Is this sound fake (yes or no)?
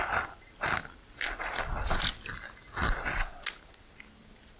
no